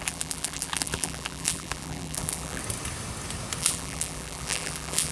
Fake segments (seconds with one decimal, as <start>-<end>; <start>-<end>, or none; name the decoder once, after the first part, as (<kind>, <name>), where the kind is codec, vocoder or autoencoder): 0.0-2.6 (vocoder, BigVGAN v2); 3.6-5.1